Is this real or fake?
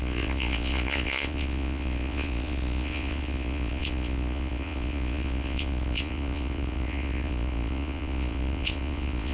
fake